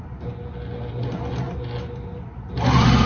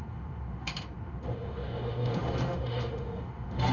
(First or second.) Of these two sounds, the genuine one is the first